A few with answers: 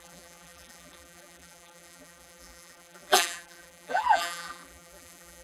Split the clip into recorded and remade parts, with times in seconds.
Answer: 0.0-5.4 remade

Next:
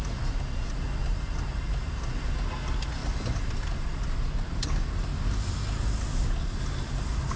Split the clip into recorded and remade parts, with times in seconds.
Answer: 0.0-7.4 recorded

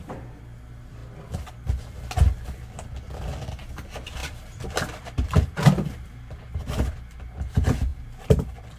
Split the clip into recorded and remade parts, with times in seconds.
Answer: 0.0-4.2 recorded; 4.2-6.6 remade; 6.6-7.9 recorded; 7.9-8.8 remade

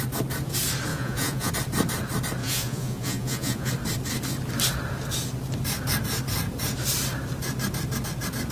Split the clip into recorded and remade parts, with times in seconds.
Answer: 0.0-0.9 recorded; 0.9-1.5 remade; 1.5-2.4 recorded; 2.4-3.7 remade; 3.7-8.5 recorded